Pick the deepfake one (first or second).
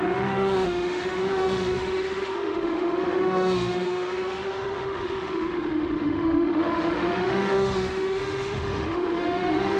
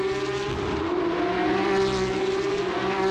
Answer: first